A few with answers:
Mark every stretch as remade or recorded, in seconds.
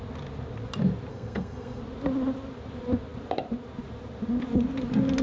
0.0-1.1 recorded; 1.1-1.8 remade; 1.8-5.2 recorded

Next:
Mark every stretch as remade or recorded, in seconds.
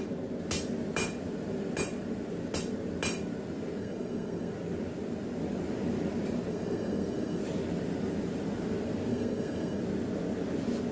0.0-3.8 recorded; 3.8-4.5 remade; 4.5-6.5 recorded; 6.5-7.4 remade; 7.4-9.1 recorded; 9.1-9.8 remade; 9.8-10.9 recorded